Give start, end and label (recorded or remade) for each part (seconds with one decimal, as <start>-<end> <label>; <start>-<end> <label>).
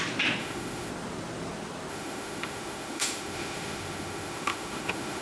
0.0-0.4 recorded; 0.4-0.9 remade; 0.9-1.9 recorded; 1.9-5.2 remade